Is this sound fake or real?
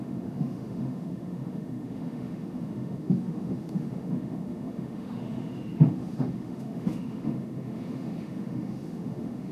fake